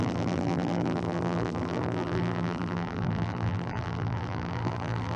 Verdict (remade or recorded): remade